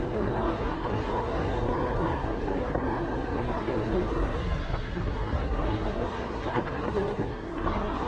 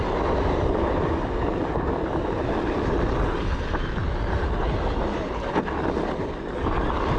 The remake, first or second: first